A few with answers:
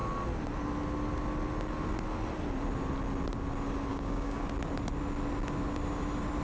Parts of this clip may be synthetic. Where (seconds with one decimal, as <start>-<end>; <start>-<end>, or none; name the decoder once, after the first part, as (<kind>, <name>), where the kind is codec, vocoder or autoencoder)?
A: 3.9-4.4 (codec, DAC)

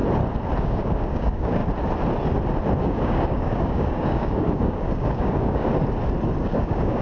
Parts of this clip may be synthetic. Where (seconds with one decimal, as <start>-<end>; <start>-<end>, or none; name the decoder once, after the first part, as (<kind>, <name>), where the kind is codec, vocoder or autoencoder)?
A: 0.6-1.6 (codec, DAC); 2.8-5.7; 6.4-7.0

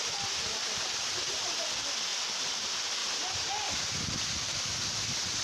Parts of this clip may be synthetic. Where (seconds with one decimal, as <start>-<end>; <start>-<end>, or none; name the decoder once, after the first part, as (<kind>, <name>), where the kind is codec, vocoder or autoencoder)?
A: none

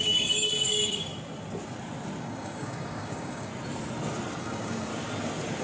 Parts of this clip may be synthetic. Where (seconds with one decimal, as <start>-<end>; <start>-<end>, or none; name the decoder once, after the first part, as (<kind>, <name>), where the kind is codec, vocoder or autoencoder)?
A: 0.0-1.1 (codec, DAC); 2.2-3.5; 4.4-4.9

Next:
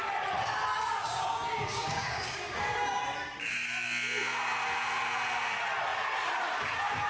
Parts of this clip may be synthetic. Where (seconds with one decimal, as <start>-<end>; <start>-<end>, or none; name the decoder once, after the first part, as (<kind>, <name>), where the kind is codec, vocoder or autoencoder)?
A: 1.0-3.0 (codec, DAC)